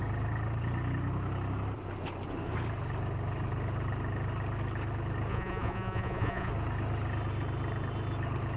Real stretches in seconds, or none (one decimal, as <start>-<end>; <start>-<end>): 0.0-5.3; 6.5-8.6